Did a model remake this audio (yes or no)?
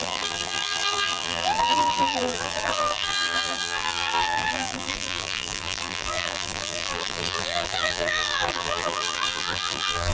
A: yes